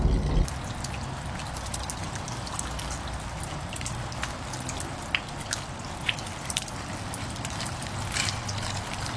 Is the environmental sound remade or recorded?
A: recorded